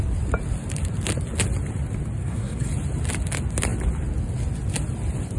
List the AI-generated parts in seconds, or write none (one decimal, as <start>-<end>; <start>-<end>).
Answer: 2.2-2.7